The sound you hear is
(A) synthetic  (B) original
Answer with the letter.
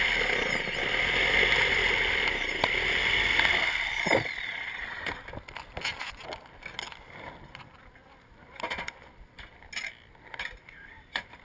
B